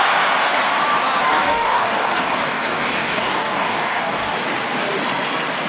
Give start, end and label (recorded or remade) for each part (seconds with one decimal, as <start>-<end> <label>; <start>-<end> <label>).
0.0-1.3 recorded; 1.3-4.3 remade; 4.3-5.7 recorded